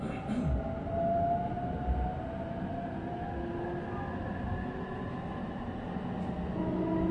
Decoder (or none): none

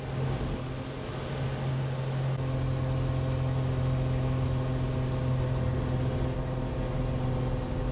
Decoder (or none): none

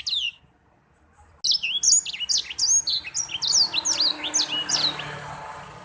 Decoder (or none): none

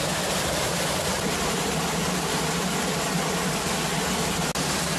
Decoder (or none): none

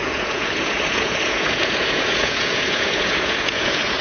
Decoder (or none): vocoder, Vocos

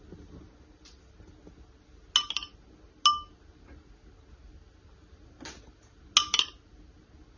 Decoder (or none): none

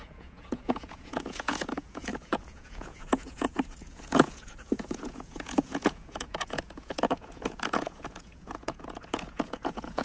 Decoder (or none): vocoder, Vocos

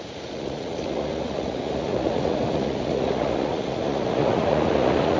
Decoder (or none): vocoder, Vocos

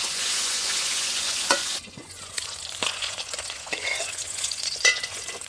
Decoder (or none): vocoder, Vocos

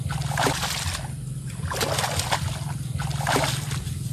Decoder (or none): none